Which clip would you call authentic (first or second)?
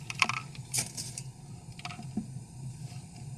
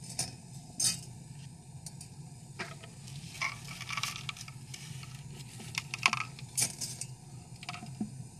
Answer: second